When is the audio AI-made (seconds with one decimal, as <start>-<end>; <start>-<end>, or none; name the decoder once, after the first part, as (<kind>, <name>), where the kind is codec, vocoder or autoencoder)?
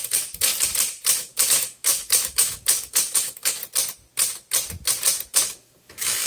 0.0-0.5 (autoencoder, DAC-VAE); 1.2-3.6; 5.3-6.3